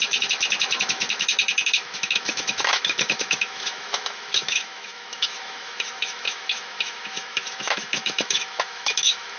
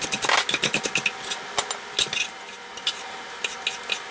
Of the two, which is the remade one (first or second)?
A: first